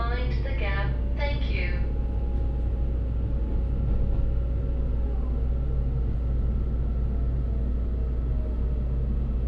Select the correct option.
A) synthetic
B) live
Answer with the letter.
B